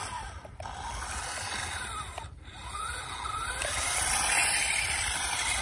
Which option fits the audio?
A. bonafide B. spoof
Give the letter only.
A